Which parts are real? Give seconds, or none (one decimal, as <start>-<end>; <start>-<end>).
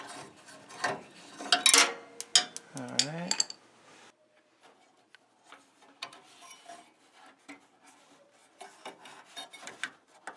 0.0-10.4